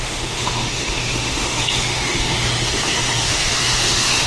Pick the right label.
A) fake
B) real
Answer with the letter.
A